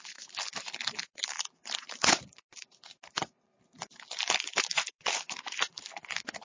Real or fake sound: fake